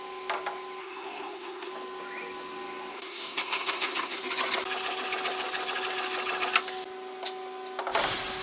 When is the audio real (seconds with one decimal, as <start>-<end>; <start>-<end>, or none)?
0.0-0.8; 1.7-2.9; 4.2-8.4